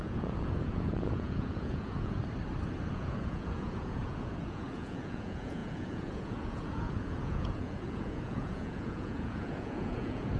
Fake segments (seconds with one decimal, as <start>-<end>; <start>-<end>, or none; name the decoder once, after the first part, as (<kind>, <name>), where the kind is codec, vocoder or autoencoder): 0.0-2.2 (vocoder, Vocos); 2.9-10.4